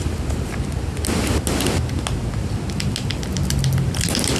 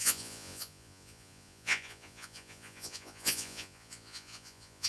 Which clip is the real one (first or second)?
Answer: first